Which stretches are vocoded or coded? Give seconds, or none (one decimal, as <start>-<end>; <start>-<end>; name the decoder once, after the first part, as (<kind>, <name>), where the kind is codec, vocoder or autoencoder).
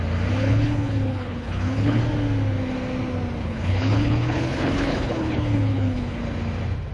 0.4-2.0 (codec, HILCodec); 3.4-6.2